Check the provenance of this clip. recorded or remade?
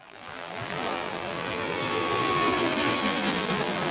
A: remade